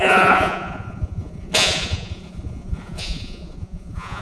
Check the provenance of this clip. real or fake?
fake